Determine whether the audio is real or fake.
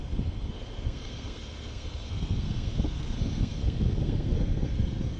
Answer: fake